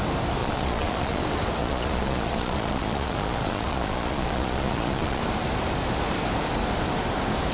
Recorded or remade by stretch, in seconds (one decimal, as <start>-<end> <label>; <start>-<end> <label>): 0.0-0.4 recorded; 0.4-1.2 remade; 1.2-1.6 recorded; 1.6-5.2 remade; 5.2-7.5 recorded